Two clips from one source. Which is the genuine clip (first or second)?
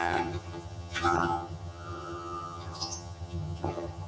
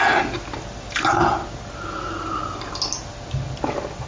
second